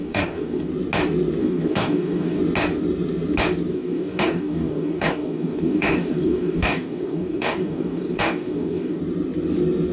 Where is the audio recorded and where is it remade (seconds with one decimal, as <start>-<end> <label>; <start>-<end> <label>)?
0.0-0.7 remade; 0.7-1.4 recorded; 1.4-2.4 remade; 2.4-3.7 recorded; 3.7-9.0 remade; 9.0-9.9 recorded